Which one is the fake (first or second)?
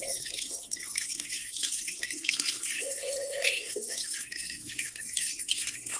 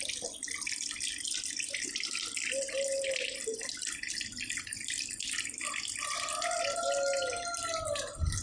first